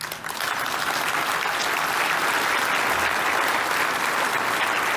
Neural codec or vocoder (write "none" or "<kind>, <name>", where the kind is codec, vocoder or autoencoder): none